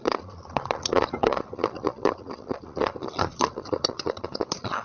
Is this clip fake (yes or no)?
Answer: yes